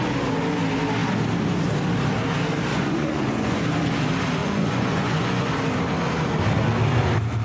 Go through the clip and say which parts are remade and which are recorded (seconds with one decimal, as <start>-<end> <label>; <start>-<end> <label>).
0.0-2.7 recorded; 2.7-3.6 remade; 3.6-4.4 recorded; 4.4-5.5 remade; 5.5-7.4 recorded